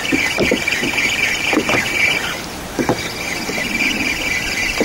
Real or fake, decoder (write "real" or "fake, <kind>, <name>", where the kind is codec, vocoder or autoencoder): real